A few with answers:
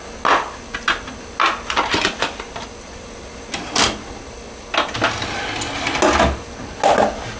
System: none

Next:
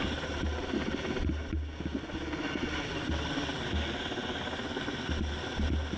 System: none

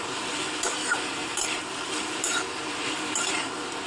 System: vocoder, BigVGAN v2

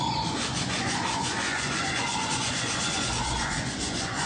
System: vocoder, Vocos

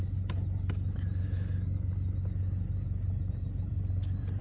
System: none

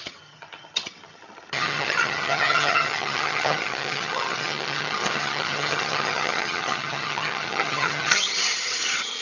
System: vocoder, HiFi-GAN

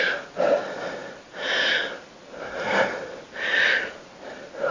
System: none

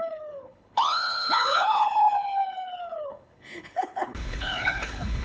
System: codec, HILCodec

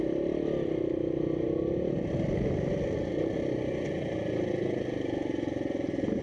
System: none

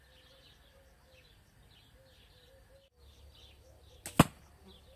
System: none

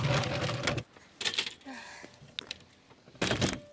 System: none